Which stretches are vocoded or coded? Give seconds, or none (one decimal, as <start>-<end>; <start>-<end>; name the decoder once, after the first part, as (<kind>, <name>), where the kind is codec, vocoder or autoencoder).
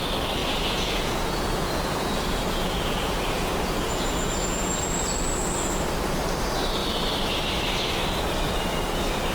0.4-4.8 (vocoder, Vocos)